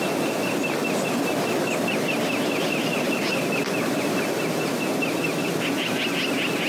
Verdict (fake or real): real